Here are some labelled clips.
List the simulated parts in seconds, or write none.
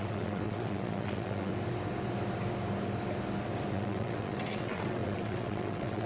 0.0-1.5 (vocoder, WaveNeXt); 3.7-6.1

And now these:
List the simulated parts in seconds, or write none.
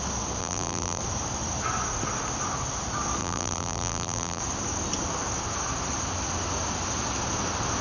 0.4-1.0 (vocoder, BigVGAN v2); 3.2-4.4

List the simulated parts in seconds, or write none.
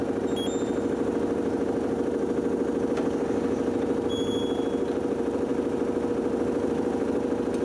0.6-5.5 (vocoder, BigVGAN v2); 6.1-7.6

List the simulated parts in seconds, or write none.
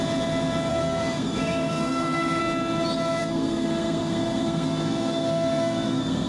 0.7-2.4 (codec, SNAC); 3.2-6.3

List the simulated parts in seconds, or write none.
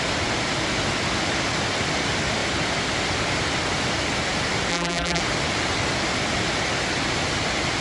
4.7-5.2 (vocoder, BigVGAN v2)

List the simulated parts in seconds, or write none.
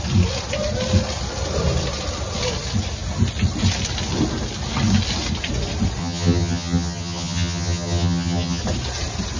6.0-8.6 (vocoder, HiFi-GAN)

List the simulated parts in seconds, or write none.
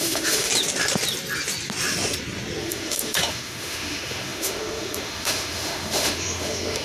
0.0-0.5 (autoencoder, DAC-VAE); 2.6-6.8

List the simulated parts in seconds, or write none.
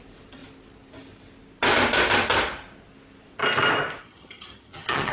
4.0-5.1 (vocoder, HiFi-GAN)